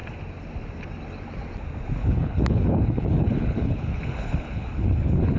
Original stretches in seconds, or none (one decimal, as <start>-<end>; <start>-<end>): 0.0-2.0